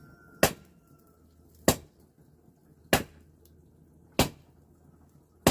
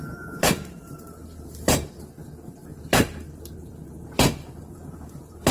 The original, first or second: first